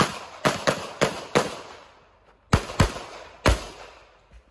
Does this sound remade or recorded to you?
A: recorded